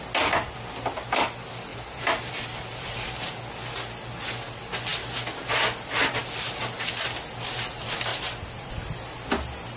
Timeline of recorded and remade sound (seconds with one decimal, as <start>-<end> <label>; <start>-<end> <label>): 0.0-1.7 recorded; 1.7-2.3 remade; 2.3-8.1 recorded; 8.1-8.7 remade; 8.7-9.8 recorded